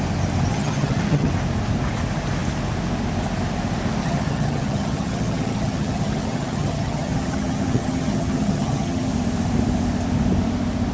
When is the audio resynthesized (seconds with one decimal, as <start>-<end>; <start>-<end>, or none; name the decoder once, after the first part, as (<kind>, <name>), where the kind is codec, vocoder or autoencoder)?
0.5-1.3 (vocoder, HiFi-GAN); 4.0-9.1